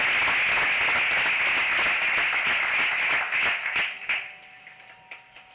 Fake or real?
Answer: real